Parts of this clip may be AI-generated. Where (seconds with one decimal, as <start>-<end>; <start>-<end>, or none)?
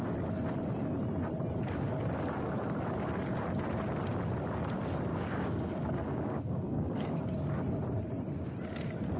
5.1-7.2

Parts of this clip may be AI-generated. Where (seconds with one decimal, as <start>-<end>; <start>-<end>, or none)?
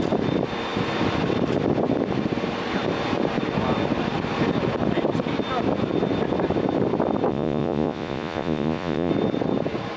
7.3-9.1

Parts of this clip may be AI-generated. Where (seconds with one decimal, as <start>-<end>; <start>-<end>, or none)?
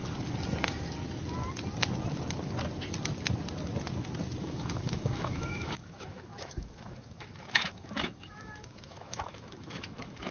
4.4-10.3